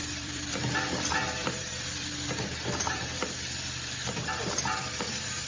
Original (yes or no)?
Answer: no